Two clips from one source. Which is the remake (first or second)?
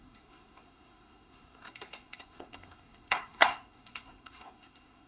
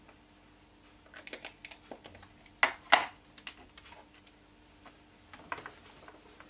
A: first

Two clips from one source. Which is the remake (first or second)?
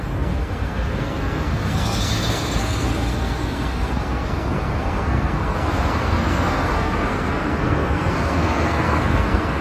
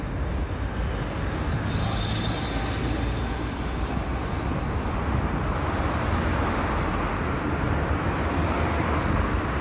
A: first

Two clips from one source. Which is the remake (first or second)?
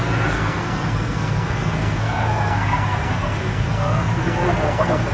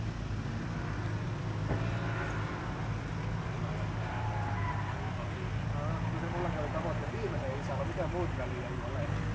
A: first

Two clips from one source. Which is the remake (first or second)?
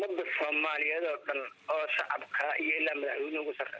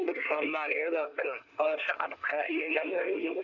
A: second